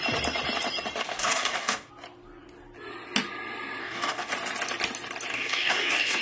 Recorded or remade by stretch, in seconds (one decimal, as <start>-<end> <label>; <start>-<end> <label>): 0.0-1.0 recorded; 1.0-1.9 remade; 1.9-3.8 recorded; 3.8-4.3 remade; 4.3-5.3 recorded; 5.3-6.2 remade